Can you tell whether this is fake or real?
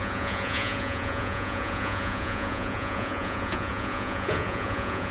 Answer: fake